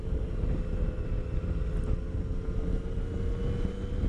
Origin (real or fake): real